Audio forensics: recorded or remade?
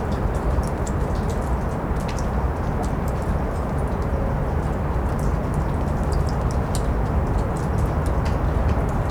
recorded